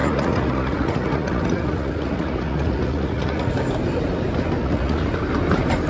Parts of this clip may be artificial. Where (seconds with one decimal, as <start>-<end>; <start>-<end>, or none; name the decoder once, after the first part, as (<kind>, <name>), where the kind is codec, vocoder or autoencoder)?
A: 0.0-3.5 (vocoder, Vocos); 4.6-5.1